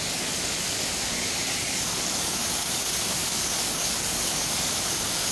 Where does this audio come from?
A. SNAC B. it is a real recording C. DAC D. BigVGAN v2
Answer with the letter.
C